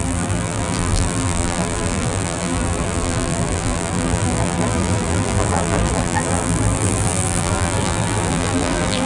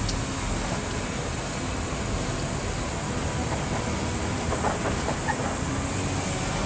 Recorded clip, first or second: second